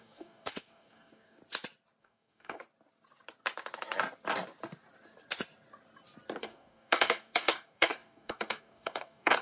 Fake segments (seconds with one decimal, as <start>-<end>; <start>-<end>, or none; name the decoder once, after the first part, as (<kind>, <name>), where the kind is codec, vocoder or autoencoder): 0.0-1.4 (codec, DAC); 2.0-2.6; 6.4-9.4